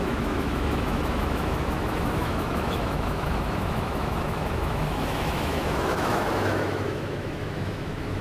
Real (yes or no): no